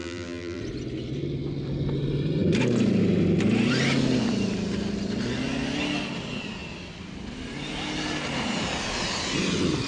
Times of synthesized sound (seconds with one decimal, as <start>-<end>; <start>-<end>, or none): 0.0-0.6